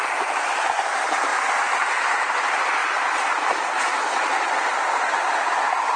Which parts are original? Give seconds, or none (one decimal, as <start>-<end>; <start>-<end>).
0.0-6.0